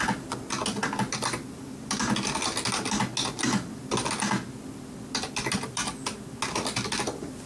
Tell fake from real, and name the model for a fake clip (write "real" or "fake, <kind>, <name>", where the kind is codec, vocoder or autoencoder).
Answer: real